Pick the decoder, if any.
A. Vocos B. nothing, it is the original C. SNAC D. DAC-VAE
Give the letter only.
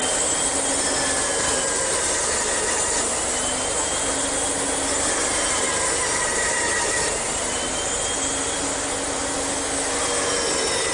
B